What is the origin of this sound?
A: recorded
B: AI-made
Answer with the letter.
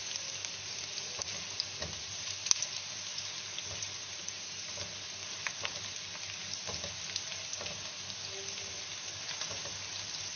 A